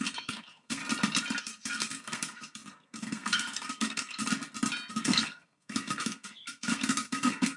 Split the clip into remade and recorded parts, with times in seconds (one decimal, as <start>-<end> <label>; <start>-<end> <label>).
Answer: 0.0-0.8 remade; 0.8-1.4 recorded; 1.4-4.2 remade; 4.2-4.9 recorded; 4.9-7.6 remade